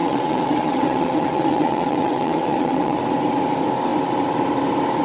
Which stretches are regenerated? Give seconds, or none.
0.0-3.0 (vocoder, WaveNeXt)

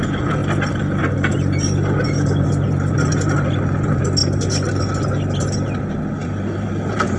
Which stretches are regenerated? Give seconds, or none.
none

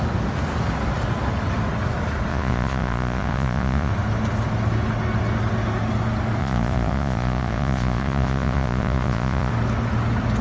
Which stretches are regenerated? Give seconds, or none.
2.3-3.9 (vocoder, Vocos); 6.4-9.5

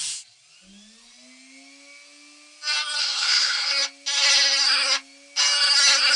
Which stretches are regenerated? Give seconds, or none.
3.0-3.7 (codec, SNAC)

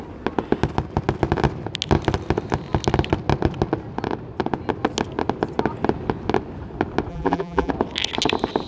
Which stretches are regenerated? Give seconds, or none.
7.1-7.7 (vocoder, BigVGAN v2)

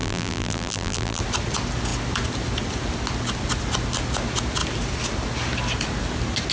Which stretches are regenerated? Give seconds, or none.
0.0-1.2 (vocoder, BigVGAN v2)

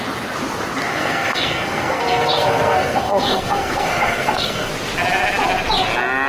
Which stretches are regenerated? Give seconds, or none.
0.9-4.7 (codec, SNAC)

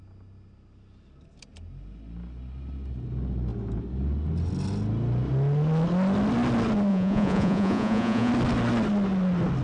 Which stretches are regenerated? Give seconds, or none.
6.9-8.3 (vocoder, Vocos)